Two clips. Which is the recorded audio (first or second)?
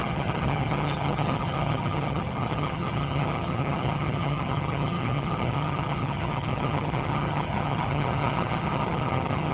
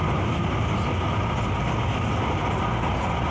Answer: second